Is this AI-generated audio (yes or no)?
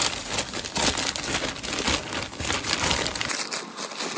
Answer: no